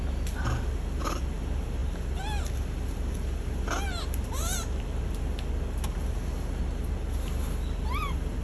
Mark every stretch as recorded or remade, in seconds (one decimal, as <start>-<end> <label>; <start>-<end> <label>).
0.0-8.4 recorded